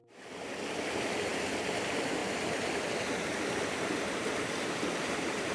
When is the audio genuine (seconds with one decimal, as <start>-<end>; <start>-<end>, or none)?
0.0-0.7; 1.3-1.8